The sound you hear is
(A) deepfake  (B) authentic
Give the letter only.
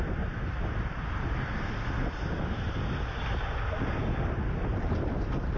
B